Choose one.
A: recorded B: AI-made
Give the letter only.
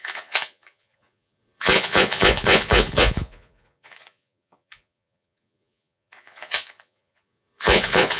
B